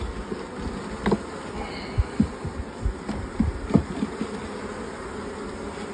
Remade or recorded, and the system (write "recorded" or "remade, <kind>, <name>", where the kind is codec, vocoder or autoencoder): recorded